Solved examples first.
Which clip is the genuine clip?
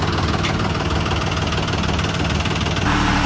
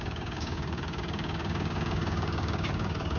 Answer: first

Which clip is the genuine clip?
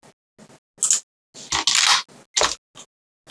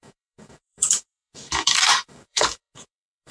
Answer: first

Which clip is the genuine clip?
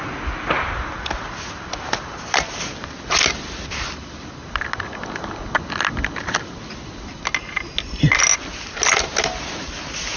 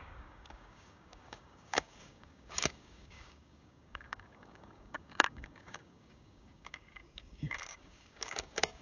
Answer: first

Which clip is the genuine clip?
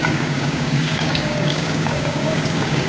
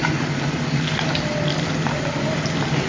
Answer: second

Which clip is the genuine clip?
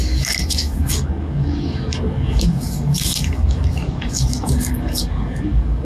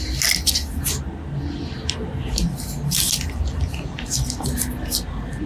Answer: second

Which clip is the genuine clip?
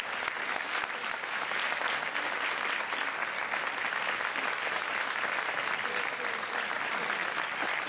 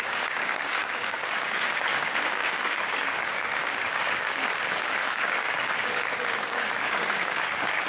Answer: first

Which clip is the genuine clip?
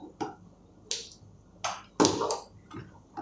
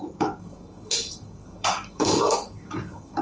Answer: first